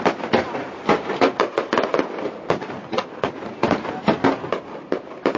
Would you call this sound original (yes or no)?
yes